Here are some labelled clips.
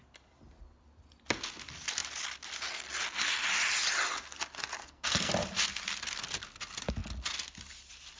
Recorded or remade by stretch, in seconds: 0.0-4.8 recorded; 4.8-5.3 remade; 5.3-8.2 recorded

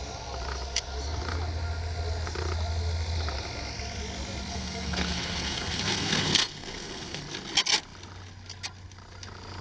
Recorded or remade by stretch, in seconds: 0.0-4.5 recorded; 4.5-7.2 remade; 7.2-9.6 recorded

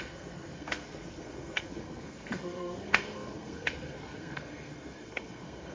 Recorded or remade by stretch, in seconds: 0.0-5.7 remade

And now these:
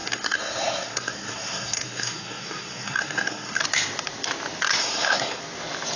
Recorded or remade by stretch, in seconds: 0.0-3.6 remade; 3.6-4.8 recorded; 4.8-5.4 remade; 5.4-6.0 recorded